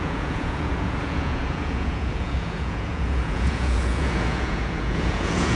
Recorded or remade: remade